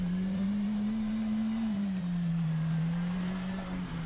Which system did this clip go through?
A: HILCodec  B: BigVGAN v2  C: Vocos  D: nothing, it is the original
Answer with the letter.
B